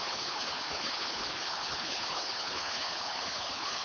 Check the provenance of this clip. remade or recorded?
remade